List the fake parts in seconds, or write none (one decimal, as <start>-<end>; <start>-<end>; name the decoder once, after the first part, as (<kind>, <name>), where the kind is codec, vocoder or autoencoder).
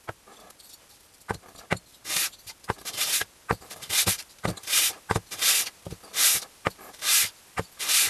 0.0-1.9 (vocoder, BigVGAN v2); 2.5-8.1